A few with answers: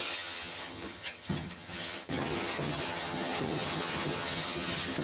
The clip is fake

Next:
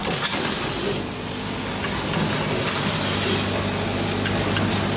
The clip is real